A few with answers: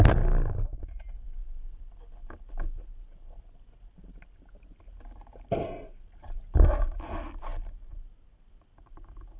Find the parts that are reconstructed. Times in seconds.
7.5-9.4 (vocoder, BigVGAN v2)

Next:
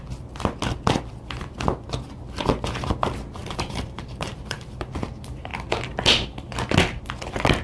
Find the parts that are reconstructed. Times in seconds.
3.4-4.9 (vocoder, BigVGAN v2)

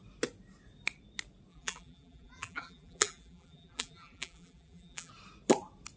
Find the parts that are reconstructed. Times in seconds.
1.5-5.1 (vocoder, BigVGAN v2)

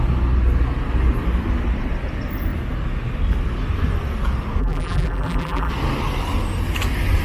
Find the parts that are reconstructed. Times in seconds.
4.6-5.7 (vocoder, BigVGAN v2)